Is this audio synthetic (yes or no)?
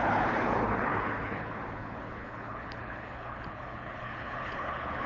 yes